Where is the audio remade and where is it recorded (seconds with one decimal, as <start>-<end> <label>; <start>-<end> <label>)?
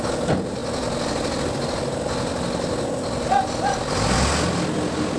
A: 0.0-5.2 recorded